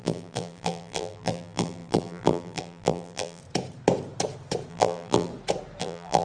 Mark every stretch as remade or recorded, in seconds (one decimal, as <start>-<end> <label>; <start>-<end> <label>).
0.0-3.4 remade; 3.4-4.7 recorded; 4.7-5.3 remade; 5.3-5.8 recorded; 5.8-6.2 remade